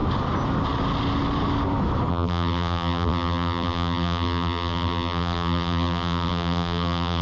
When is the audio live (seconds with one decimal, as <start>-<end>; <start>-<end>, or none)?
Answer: 0.0-2.1